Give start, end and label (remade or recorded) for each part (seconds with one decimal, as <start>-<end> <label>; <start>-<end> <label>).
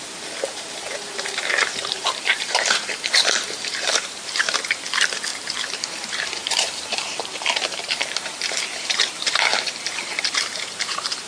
0.0-11.3 remade